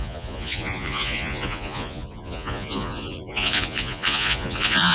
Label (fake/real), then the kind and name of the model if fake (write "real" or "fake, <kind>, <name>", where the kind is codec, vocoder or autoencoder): fake, vocoder, Vocos